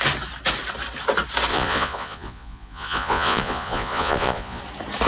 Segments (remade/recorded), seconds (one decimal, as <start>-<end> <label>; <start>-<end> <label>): 0.0-1.5 recorded; 1.5-4.6 remade; 4.6-5.1 recorded